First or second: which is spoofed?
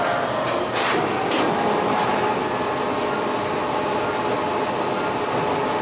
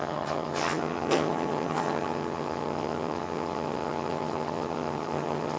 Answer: second